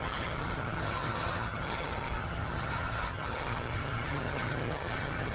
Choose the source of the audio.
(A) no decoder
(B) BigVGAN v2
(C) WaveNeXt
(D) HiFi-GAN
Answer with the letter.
D